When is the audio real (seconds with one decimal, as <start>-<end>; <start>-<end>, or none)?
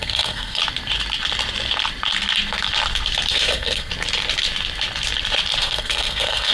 0.6-3.3; 3.9-5.6